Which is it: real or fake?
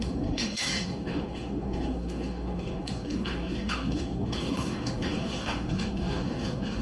fake